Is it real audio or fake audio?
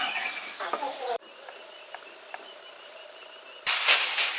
real